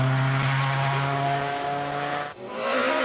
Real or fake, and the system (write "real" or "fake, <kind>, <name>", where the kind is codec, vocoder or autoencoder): real